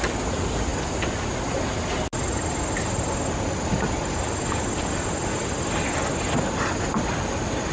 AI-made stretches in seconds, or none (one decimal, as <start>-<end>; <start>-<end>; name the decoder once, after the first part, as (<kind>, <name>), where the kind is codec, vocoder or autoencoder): none